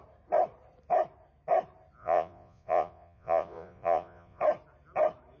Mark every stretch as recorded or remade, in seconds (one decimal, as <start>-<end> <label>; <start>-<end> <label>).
0.0-2.0 recorded; 2.0-4.4 remade; 4.4-5.4 recorded